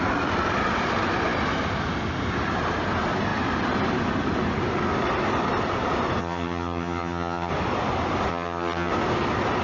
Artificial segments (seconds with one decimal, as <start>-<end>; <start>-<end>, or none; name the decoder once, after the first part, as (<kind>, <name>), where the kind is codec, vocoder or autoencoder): 6.2-7.5 (vocoder, HiFi-GAN); 8.3-8.9